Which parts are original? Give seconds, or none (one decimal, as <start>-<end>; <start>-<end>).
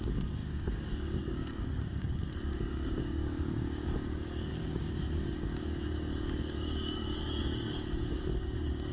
none